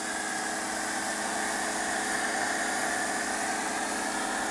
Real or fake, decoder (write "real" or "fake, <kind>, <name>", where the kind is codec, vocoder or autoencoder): real